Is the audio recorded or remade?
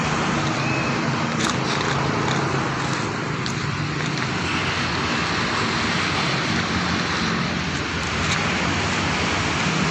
recorded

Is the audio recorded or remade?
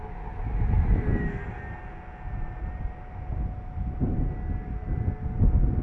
recorded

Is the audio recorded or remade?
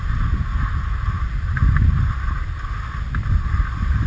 recorded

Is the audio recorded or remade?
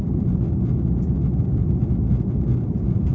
recorded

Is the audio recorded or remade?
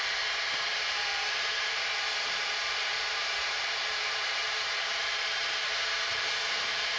remade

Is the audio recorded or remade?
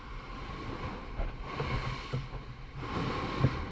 recorded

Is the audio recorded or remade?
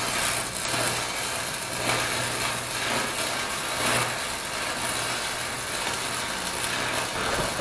recorded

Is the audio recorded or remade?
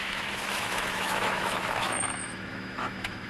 remade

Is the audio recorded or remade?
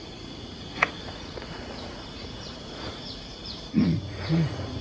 remade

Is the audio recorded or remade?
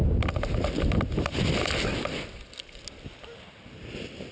recorded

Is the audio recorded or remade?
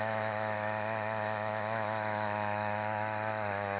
remade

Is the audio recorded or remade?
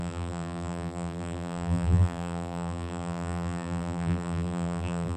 remade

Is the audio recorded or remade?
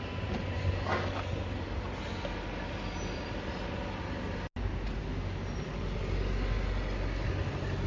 recorded